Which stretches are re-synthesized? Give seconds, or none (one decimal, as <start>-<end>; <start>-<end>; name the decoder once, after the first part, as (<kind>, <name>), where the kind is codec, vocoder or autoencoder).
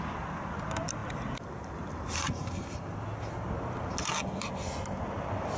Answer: none